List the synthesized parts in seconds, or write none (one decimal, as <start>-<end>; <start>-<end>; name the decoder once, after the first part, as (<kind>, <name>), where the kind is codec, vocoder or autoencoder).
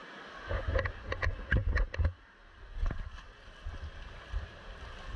none